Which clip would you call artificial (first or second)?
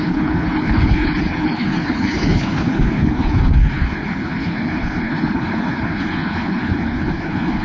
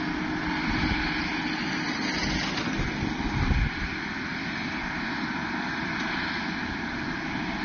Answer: first